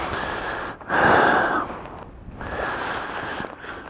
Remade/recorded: recorded